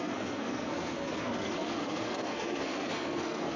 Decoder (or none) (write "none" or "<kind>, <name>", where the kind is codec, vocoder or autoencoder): codec, SNAC